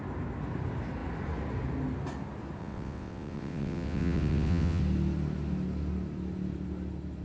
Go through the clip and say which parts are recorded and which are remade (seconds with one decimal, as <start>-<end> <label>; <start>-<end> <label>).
0.0-2.6 recorded; 2.6-4.8 remade; 4.8-7.2 recorded